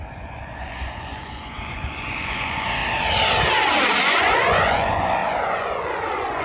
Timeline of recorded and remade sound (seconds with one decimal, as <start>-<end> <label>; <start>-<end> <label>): 0.0-2.8 remade; 2.8-4.0 recorded; 4.0-6.4 remade